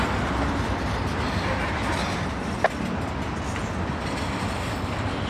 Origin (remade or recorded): recorded